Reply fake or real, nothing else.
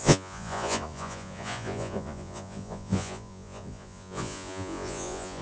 fake